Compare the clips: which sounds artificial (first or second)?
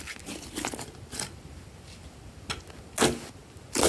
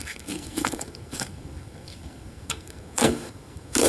second